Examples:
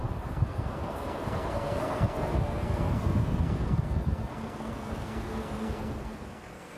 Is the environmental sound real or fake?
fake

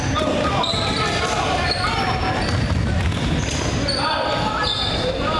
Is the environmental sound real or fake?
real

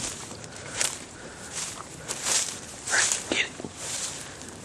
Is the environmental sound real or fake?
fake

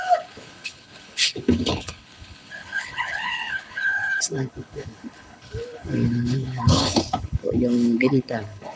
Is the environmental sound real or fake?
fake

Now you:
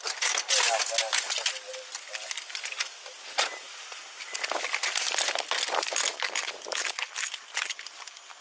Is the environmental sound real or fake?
real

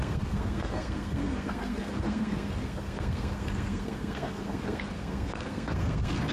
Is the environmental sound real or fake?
fake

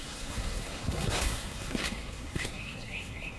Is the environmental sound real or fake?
fake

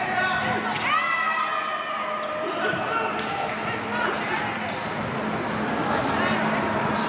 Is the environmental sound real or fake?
real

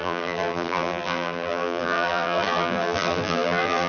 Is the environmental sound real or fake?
fake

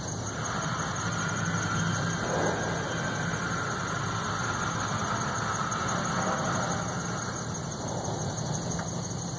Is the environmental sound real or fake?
real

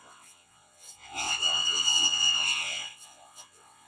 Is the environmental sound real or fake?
fake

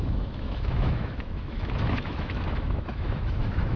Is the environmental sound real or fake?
fake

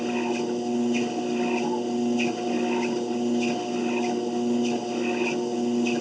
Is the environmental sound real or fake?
real